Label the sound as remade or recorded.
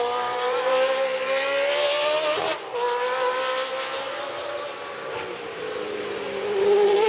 recorded